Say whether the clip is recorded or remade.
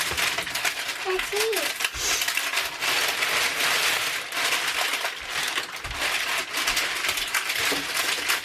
recorded